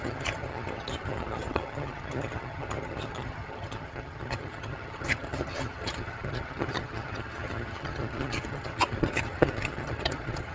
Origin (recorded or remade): remade